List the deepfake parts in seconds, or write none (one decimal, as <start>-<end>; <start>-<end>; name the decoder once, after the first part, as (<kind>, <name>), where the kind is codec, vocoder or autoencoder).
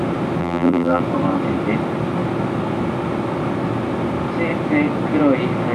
0.4-1.0 (vocoder, BigVGAN v2)